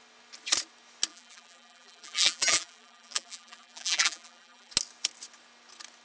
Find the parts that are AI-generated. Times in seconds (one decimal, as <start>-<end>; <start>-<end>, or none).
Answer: 1.1-4.7

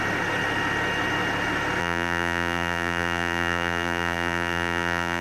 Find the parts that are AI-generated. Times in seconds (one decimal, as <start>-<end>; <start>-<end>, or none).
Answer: 1.8-5.2

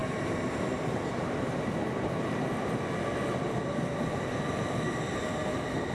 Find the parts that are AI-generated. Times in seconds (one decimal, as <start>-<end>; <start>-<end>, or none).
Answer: none